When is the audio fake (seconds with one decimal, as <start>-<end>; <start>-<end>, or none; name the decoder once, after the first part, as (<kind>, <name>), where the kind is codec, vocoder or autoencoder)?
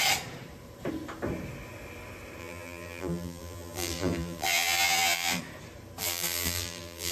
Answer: 2.4-5.4 (vocoder, BigVGAN v2); 6.0-7.1